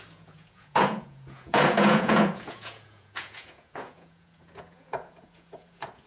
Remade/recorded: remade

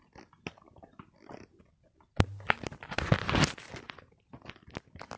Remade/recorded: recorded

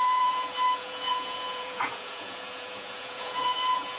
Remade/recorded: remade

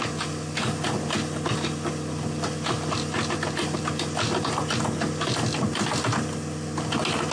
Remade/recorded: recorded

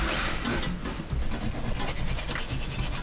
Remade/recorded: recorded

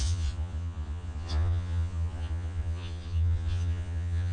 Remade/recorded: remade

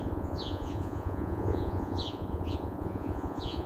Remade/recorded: remade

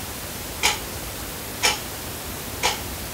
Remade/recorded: recorded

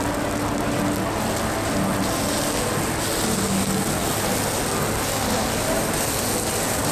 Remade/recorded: recorded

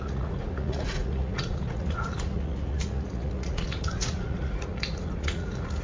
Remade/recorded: remade